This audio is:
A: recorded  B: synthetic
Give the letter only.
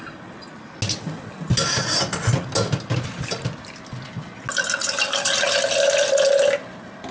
A